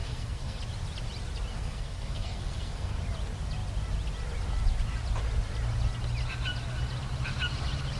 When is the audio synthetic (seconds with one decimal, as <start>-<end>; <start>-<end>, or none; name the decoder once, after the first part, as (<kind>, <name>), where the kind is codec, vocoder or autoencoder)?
0.0-0.6 (codec, SNAC); 1.5-3.0